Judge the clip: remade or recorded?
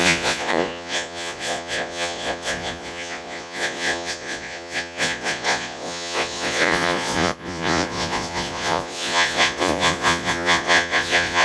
remade